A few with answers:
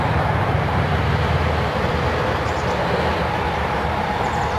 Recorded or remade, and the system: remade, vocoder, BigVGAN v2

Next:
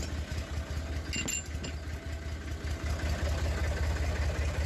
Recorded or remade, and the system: recorded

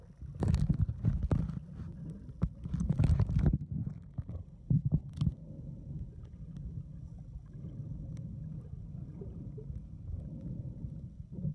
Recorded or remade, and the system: recorded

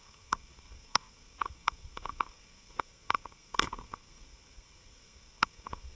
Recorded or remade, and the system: remade, codec, SNAC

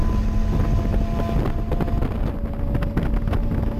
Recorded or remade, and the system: recorded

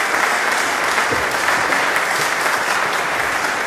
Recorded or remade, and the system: recorded